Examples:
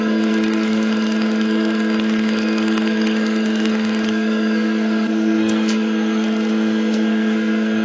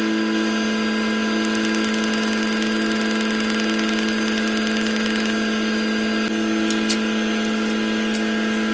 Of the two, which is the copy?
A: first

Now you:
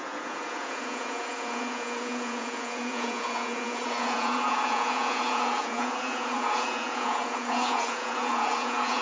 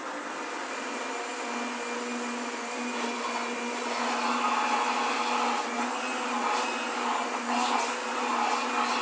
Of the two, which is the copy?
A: first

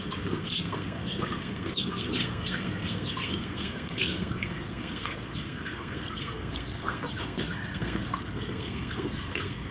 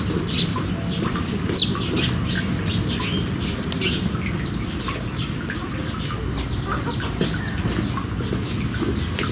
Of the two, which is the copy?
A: first